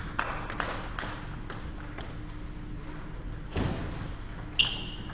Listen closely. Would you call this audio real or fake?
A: real